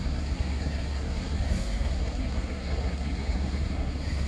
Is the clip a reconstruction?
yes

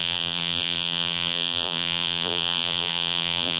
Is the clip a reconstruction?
yes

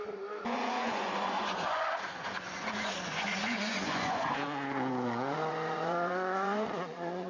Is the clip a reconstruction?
yes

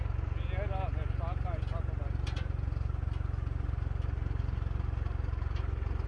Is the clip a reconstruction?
no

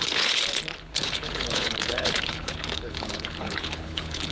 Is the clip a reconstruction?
yes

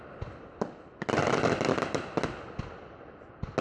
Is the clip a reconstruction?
no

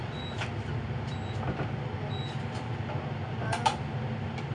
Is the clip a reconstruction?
yes